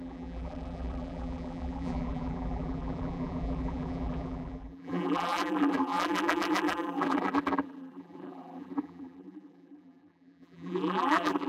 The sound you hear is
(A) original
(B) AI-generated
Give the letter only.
B